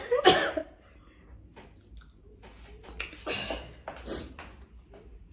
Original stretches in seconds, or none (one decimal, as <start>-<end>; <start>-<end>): 0.0-5.3